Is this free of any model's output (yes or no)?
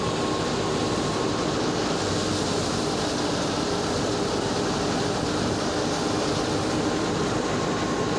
yes